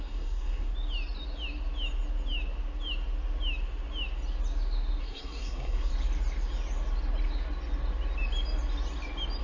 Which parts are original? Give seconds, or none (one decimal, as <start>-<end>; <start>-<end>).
0.7-5.0; 5.9-9.4

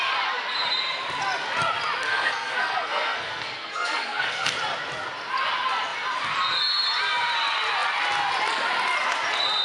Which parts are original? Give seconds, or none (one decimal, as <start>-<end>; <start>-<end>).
0.0-2.1; 4.5-9.6